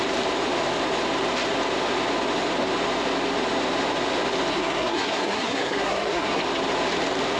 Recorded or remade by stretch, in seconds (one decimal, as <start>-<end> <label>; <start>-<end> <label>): 0.0-4.5 recorded; 4.5-6.4 remade; 6.4-7.4 recorded